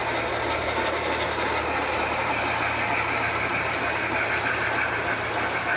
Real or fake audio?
real